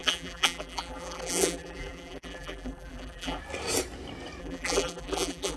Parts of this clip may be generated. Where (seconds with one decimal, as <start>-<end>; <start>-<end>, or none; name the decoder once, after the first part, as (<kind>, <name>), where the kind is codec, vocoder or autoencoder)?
0.0-3.4 (vocoder, BigVGAN v2); 4.4-5.6